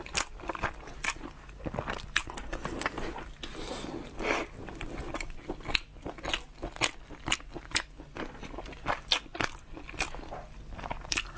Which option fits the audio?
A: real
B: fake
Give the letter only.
A